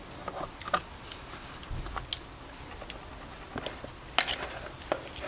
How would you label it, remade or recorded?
recorded